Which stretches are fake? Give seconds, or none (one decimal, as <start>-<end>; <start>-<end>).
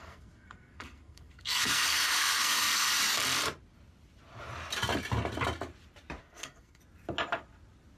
0.0-2.9; 6.2-6.8